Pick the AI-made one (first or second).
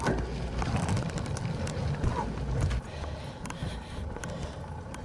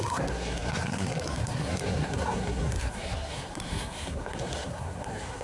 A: second